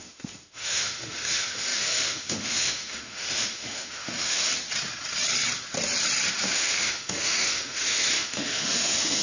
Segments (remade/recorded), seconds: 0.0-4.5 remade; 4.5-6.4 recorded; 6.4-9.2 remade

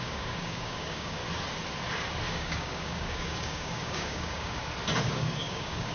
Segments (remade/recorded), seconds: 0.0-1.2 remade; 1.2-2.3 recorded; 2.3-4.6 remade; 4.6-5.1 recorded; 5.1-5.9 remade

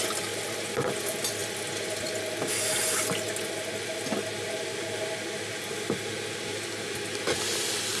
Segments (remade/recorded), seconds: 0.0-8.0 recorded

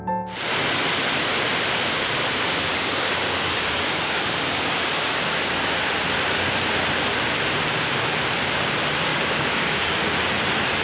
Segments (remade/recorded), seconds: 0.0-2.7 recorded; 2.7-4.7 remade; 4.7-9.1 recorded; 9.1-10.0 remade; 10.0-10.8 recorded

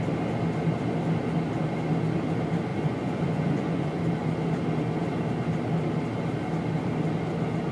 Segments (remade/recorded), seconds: 0.0-2.7 recorded; 2.7-4.0 remade; 4.0-7.7 recorded

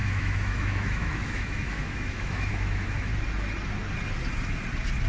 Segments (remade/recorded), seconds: 0.0-3.1 remade; 3.1-5.1 recorded

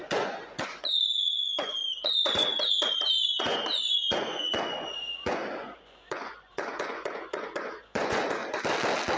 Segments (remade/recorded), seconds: 0.0-8.4 remade; 8.4-9.2 recorded